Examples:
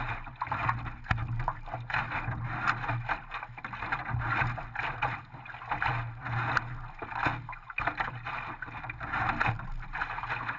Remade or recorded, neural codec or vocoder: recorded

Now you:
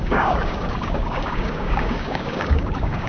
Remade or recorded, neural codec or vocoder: remade, codec, DAC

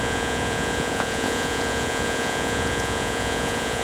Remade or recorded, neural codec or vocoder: remade, vocoder, Vocos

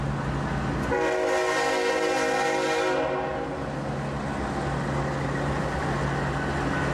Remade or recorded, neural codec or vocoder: recorded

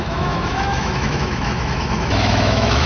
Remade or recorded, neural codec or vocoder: remade, autoencoder, DAC-VAE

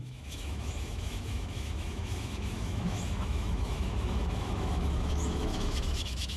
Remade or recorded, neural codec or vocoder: remade, autoencoder, DAC-VAE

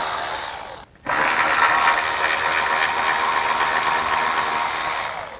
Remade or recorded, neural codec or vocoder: recorded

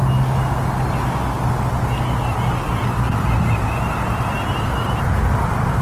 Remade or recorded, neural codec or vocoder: recorded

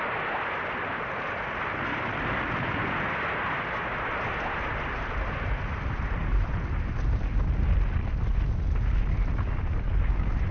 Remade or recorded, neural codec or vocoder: recorded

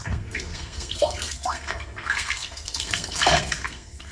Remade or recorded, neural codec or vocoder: remade, codec, SNAC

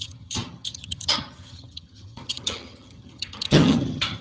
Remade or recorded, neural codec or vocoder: remade, vocoder, HiFi-GAN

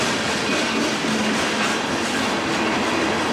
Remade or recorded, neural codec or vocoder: recorded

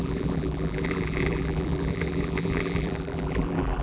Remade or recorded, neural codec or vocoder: remade, vocoder, BigVGAN v2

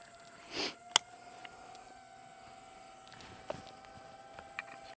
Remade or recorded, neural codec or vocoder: recorded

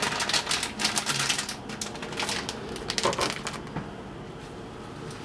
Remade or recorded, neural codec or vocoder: recorded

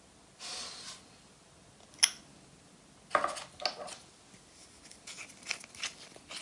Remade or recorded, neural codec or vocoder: recorded